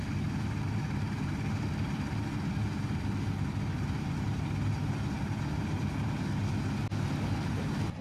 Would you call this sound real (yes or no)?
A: yes